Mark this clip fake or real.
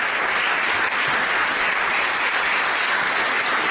real